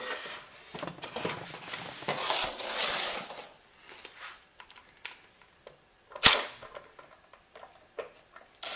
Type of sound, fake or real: real